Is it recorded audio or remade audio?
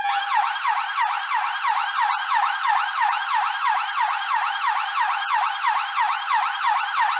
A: remade